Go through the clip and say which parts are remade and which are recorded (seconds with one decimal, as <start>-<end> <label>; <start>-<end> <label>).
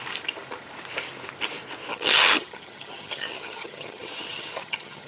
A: 0.0-1.9 recorded; 1.9-5.1 remade